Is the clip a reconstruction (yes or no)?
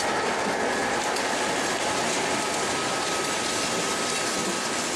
no